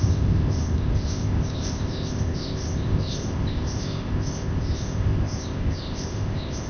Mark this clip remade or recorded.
remade